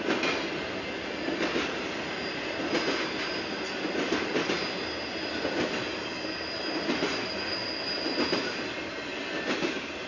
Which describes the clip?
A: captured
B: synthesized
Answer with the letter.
A